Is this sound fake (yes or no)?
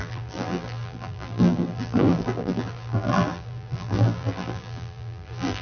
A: yes